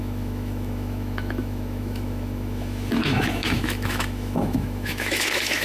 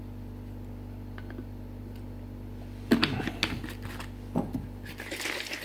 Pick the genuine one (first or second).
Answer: second